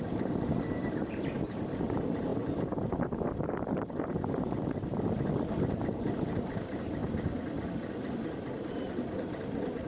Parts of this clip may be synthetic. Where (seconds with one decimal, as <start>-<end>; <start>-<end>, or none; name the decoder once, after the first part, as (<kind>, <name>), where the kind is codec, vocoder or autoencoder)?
0.0-7.0 (vocoder, BigVGAN v2); 8.1-9.9